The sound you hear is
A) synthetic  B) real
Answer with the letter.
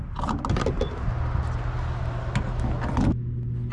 B